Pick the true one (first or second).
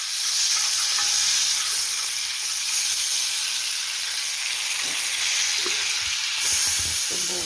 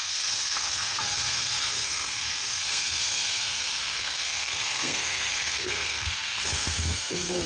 first